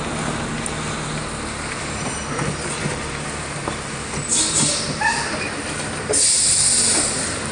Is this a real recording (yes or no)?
yes